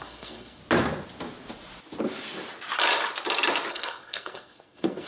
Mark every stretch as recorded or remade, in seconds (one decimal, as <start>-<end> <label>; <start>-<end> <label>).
0.0-0.6 remade; 0.6-3.7 recorded; 3.7-5.1 remade